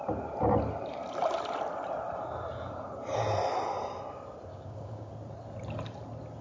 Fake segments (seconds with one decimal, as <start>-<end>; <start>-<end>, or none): 4.5-5.1